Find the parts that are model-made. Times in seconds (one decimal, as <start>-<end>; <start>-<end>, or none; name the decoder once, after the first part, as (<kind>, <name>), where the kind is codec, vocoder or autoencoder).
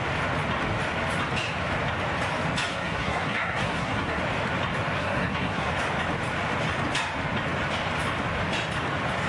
2.7-4.2 (codec, SNAC); 5.0-5.7